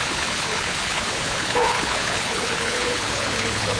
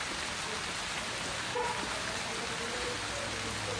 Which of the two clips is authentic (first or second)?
second